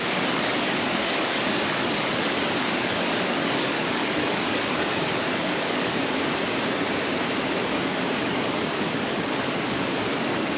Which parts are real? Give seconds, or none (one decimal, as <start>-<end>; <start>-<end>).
6.0-7.6